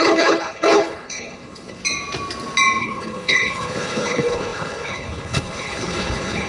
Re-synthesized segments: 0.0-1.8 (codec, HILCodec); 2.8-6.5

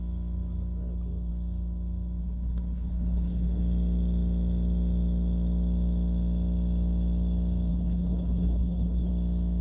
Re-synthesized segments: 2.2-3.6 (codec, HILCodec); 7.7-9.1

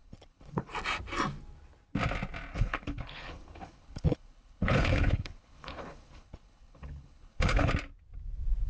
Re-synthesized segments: 0.0-0.7 (codec, HILCodec); 2.5-7.7

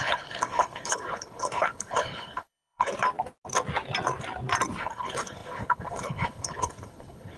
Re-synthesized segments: 0.0-2.9 (codec, HILCodec); 4.8-7.4

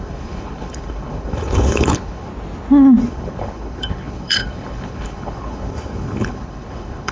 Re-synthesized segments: 0.0-2.3 (codec, HILCodec); 3.0-7.1